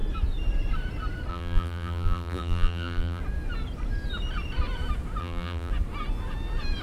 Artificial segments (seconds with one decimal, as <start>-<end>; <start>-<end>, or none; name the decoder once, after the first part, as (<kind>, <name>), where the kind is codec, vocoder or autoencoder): 1.3-3.2 (vocoder, BigVGAN v2); 5.2-5.7